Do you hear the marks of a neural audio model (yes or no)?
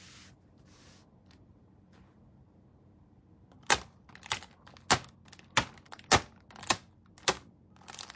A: no